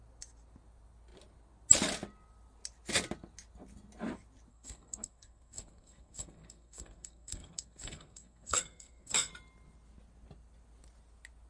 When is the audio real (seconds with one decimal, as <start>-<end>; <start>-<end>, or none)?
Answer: 0.0-4.5; 9.3-11.5